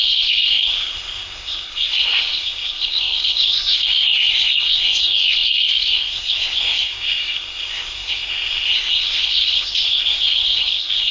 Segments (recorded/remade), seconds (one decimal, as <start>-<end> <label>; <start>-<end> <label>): 0.0-11.1 remade